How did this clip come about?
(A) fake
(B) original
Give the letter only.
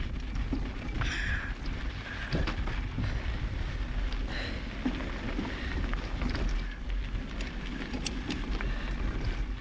B